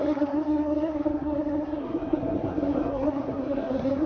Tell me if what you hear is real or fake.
fake